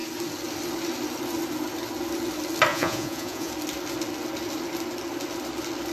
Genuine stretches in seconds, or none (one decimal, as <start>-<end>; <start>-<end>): 0.0-2.7; 3.5-5.9